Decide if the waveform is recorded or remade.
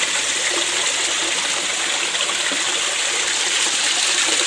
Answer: recorded